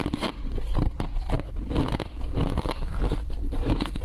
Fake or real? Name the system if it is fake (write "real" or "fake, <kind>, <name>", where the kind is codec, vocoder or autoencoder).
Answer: fake, vocoder, BigVGAN v2